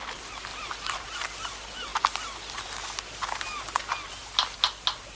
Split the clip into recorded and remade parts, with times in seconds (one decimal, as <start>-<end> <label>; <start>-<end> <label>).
0.0-5.1 recorded